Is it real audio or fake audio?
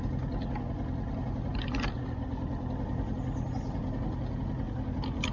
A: real